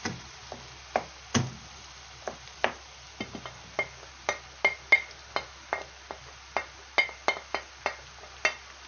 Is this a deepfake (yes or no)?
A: no